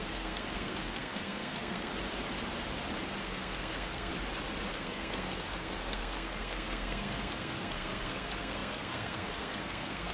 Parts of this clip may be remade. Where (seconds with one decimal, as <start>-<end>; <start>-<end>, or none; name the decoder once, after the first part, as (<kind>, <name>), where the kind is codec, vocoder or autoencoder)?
0.0-1.9 (codec, SNAC); 3.2-4.1; 4.7-10.1

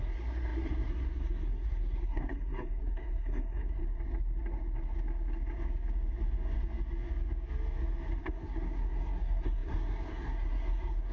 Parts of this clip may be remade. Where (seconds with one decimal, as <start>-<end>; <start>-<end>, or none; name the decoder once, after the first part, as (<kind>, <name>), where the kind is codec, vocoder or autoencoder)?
0.0-3.8 (codec, SNAC); 8.2-11.1